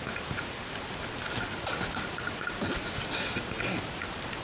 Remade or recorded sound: recorded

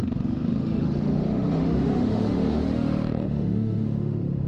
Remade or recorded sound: remade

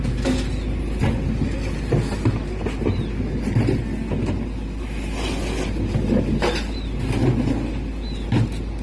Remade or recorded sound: recorded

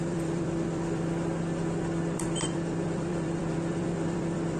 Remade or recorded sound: remade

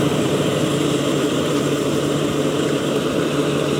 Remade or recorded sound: remade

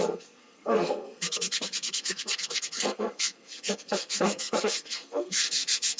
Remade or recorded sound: remade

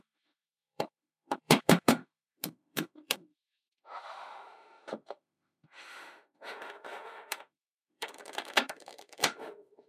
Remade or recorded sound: remade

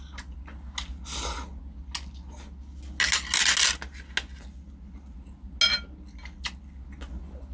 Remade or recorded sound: recorded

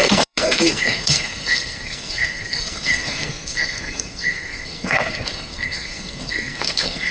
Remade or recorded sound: remade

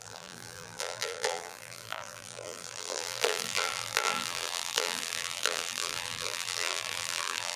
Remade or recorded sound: remade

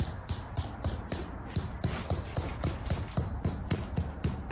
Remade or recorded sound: recorded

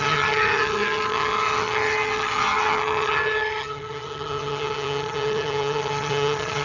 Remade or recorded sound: remade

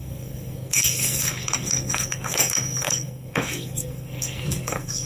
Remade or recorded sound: remade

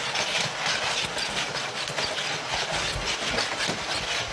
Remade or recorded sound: recorded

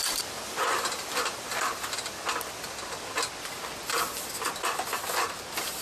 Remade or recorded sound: recorded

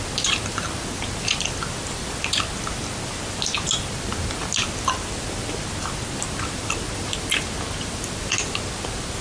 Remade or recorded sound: recorded